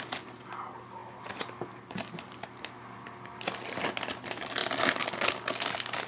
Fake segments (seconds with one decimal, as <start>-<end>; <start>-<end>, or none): none